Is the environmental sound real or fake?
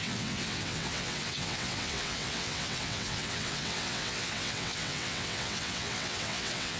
fake